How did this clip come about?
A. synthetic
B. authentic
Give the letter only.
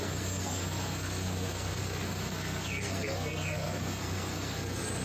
A